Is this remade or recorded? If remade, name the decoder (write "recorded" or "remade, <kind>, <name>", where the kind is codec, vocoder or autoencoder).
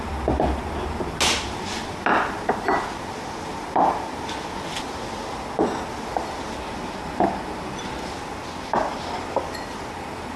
recorded